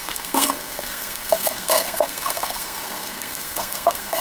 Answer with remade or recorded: remade